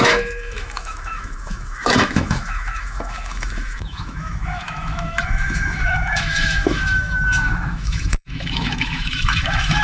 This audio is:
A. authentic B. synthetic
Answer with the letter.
B